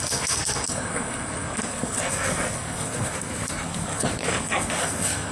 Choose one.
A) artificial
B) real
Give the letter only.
A